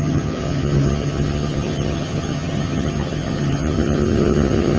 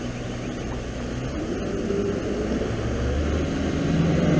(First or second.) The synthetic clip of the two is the first